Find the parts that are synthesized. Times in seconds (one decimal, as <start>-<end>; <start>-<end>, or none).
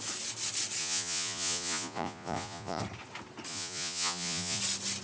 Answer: 0.8-2.8; 3.5-4.6